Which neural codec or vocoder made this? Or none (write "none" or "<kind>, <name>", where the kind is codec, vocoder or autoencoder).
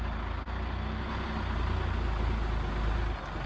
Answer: none